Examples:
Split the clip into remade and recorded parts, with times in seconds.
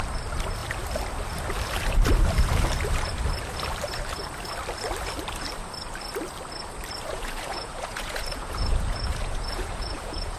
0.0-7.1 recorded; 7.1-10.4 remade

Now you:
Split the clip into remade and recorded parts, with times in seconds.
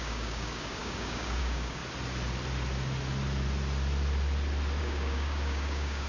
0.0-1.8 remade; 1.8-4.8 recorded; 4.8-6.1 remade